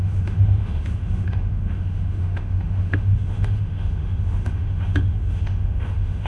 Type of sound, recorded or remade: remade